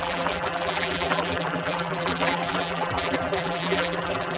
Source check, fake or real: fake